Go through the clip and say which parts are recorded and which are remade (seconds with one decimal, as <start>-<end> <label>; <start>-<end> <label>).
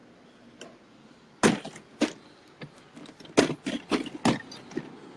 0.0-5.2 recorded